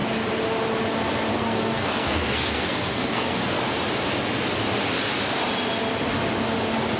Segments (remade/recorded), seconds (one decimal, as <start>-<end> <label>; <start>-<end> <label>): 0.0-1.3 recorded; 1.3-3.6 remade; 3.6-7.0 recorded